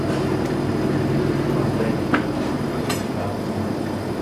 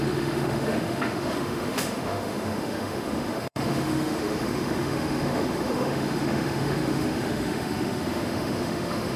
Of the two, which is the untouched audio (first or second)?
first